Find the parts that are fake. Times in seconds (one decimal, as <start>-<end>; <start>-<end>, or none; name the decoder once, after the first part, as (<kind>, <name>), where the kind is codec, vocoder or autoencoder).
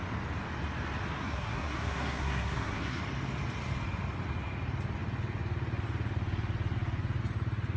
1.2-3.0 (codec, SNAC)